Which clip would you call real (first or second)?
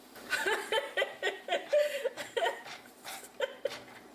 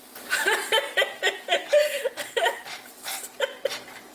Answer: second